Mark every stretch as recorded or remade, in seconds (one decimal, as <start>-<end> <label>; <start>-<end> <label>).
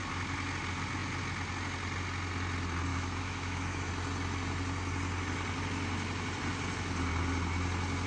0.0-2.9 recorded; 2.9-3.9 remade; 3.9-8.1 recorded